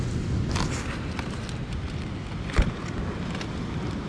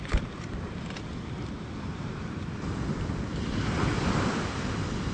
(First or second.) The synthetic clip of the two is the second